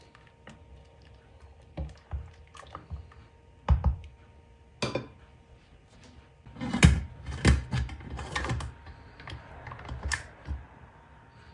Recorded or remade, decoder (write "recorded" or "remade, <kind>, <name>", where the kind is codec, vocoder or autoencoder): recorded